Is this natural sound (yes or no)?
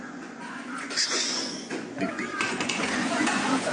no